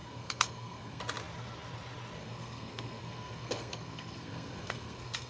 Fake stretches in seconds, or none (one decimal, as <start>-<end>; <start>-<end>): 0.0-1.0; 2.2-5.3